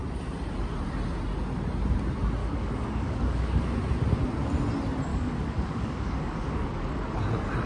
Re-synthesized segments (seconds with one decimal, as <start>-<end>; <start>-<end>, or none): 2.4-3.6; 5.1-7.1